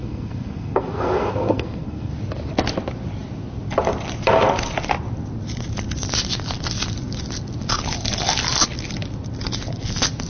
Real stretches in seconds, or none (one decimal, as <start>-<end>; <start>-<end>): 2.1-10.3